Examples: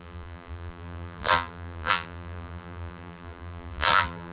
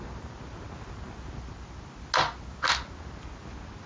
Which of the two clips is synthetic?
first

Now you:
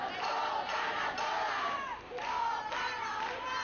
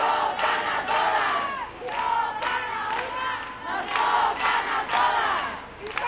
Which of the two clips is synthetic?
first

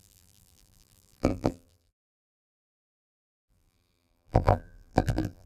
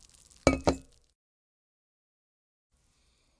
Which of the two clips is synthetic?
first